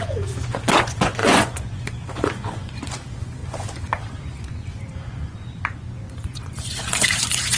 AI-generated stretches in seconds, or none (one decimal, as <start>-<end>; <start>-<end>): 0.0-7.6